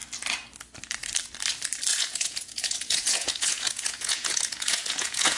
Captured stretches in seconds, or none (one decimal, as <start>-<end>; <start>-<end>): 0.0-1.9